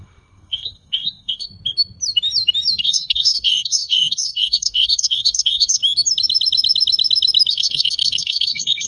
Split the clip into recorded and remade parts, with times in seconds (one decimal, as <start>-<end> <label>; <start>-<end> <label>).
0.0-1.5 remade; 1.5-2.8 recorded; 2.8-5.8 remade; 5.8-7.5 recorded; 7.5-8.9 remade